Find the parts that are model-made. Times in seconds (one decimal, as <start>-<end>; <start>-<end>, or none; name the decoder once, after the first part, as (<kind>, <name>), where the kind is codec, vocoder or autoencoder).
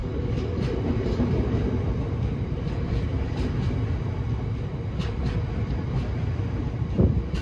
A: 0.0-0.6 (codec, DAC)